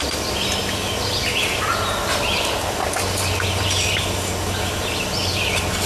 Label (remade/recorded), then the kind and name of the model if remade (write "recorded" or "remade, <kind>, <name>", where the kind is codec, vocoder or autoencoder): recorded